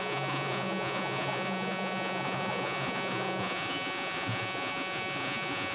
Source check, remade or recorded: remade